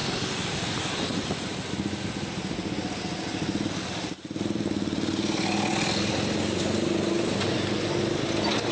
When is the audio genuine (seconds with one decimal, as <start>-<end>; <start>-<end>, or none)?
0.0-8.7